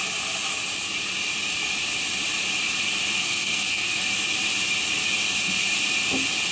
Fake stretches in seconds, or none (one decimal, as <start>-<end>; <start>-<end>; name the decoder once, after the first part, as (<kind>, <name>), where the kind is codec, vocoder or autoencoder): 3.2-4.0 (codec, SNAC)